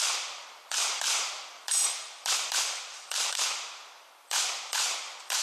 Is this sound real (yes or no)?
no